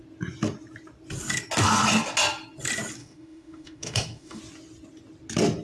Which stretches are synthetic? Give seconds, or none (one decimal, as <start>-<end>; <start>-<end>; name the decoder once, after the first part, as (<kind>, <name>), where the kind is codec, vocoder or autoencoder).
3.0-4.4 (autoencoder, DAC-VAE)